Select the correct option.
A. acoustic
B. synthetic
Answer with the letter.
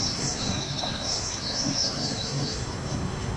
B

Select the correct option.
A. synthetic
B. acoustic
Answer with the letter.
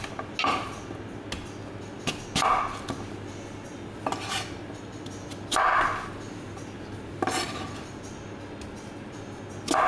B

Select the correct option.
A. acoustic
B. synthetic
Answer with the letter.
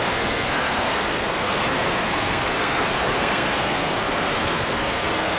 B